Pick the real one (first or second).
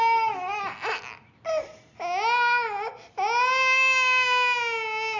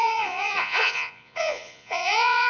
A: first